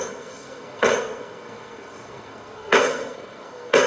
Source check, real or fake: fake